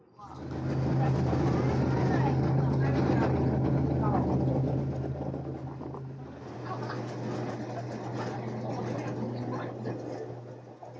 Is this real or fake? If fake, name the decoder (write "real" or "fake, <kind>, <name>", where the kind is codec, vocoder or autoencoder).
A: real